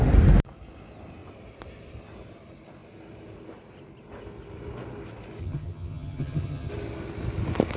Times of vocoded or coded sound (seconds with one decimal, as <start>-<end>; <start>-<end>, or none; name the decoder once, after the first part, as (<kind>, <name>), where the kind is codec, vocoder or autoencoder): 5.4-6.7 (vocoder, HiFi-GAN)